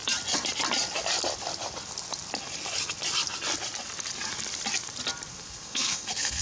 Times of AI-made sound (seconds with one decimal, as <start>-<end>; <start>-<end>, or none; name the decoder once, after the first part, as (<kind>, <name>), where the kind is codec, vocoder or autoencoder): 5.3-6.4 (codec, SNAC)